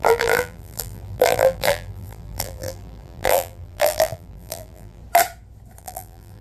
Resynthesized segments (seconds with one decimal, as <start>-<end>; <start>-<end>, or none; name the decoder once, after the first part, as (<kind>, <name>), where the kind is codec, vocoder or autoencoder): 0.0-5.0 (vocoder, BigVGAN v2); 5.8-6.4